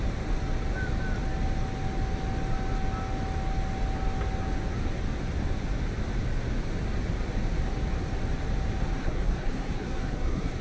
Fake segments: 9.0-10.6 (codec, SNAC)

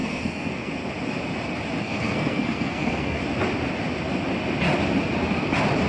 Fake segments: 0.0-0.8 (codec, SNAC); 1.8-3.2

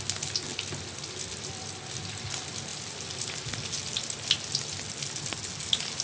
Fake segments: none

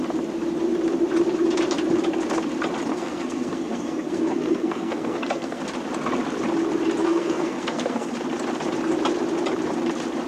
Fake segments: 2.9-5.6 (codec, SNAC); 7.0-8.1

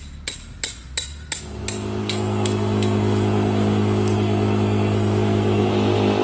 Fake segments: 2.0-5.7 (codec, SNAC)